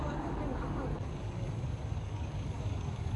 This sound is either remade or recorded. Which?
remade